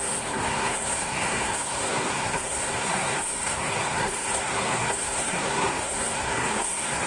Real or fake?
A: fake